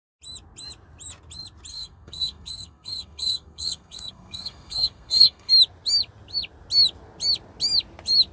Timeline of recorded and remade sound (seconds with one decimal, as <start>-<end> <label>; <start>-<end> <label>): 0.0-1.7 recorded; 1.7-5.5 remade; 5.5-8.3 recorded